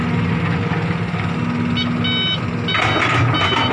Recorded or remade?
recorded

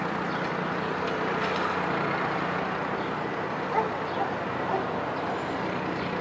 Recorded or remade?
recorded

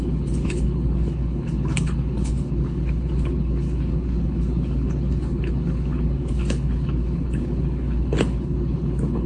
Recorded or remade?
remade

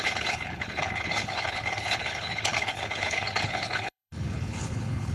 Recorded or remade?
remade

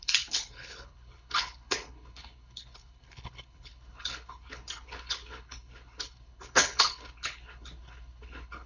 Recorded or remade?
remade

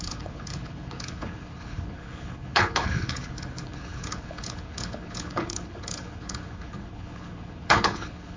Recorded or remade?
remade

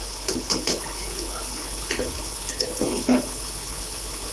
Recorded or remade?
remade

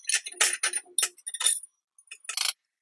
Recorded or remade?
recorded